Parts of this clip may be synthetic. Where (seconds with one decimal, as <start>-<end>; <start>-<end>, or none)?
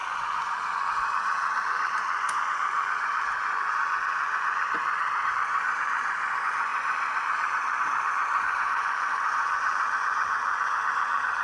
0.0-11.4